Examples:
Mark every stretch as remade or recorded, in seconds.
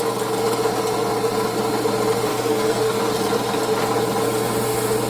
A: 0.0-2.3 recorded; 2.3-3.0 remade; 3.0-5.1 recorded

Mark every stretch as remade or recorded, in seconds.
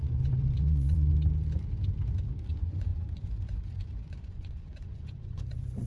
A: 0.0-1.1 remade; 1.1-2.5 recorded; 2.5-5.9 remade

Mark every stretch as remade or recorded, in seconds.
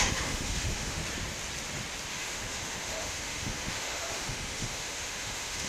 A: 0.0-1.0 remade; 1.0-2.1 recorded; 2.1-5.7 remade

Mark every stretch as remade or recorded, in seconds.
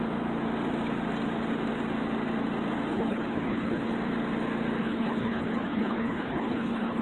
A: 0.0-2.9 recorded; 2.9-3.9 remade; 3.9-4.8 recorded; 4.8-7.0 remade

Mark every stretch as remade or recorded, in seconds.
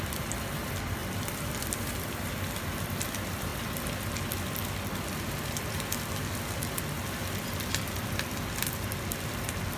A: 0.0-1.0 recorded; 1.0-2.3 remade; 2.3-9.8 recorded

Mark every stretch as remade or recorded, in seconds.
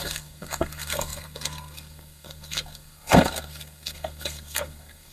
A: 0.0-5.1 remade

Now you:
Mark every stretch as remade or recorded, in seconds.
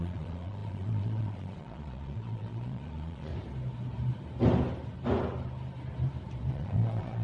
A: 0.0-3.3 remade; 3.3-6.5 recorded; 6.5-7.2 remade